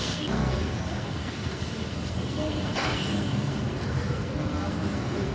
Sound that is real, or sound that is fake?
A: fake